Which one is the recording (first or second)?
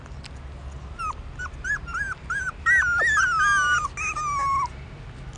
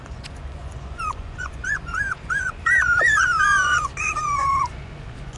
first